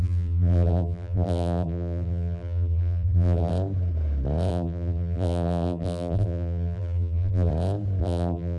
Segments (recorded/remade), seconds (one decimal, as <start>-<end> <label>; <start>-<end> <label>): 0.0-3.5 remade; 3.5-4.5 recorded; 4.5-7.5 remade; 7.5-8.0 recorded; 8.0-8.6 remade